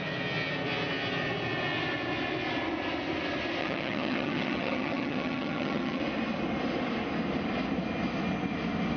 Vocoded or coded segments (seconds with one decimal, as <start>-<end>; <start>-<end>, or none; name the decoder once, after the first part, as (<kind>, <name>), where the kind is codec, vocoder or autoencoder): 3.6-6.0 (vocoder, HiFi-GAN)